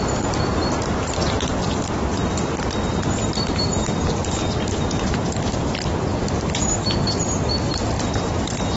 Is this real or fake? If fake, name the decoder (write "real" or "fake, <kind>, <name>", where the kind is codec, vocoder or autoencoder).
real